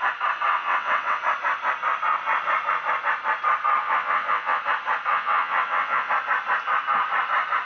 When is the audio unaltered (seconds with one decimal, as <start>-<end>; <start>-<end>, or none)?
0.0-0.5; 1.2-3.8; 4.6-5.1; 6.1-7.7

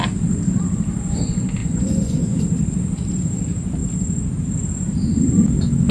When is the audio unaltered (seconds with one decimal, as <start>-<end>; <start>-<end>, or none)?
0.0-1.6; 2.4-5.9

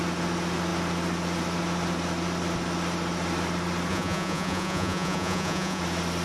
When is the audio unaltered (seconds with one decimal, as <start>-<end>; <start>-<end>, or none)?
0.0-3.9; 5.8-6.2

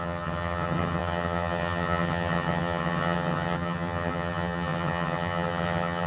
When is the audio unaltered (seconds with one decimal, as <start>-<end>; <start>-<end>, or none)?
none

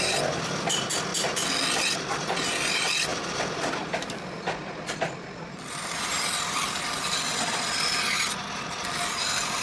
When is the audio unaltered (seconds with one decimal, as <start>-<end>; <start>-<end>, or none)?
0.0-3.1; 7.3-9.6

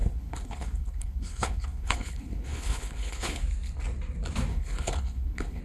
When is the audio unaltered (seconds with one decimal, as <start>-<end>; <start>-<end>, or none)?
3.4-4.5

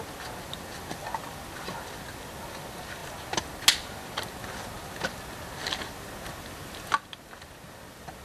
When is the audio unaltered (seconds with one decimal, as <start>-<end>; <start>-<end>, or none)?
0.0-8.2

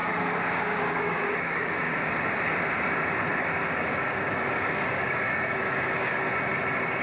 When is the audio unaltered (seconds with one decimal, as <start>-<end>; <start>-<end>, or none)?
2.1-3.4; 6.2-7.0